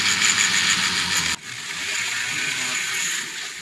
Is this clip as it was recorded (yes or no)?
yes